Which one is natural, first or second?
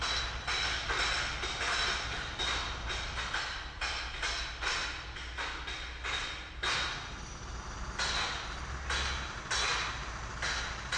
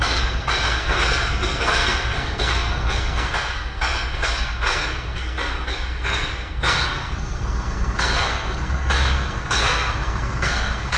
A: first